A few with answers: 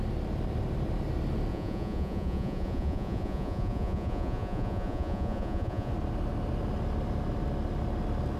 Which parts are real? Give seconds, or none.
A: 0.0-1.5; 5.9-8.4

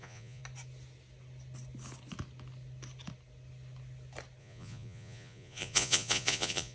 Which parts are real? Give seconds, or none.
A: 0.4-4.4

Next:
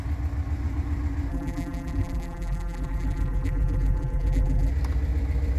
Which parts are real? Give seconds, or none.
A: 0.0-1.3; 4.7-5.6

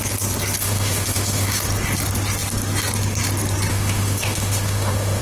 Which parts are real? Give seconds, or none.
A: 0.0-0.6; 1.6-3.7

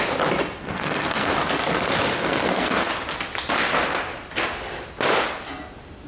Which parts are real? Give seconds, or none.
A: 0.0-0.6; 1.3-2.1; 2.9-6.1